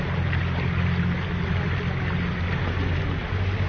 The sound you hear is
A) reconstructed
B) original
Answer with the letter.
B